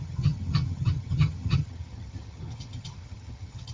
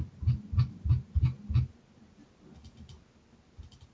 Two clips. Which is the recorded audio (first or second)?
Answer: second